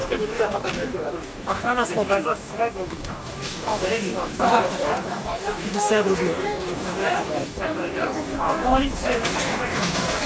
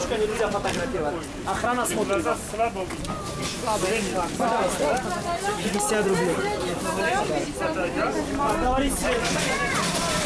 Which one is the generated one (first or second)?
first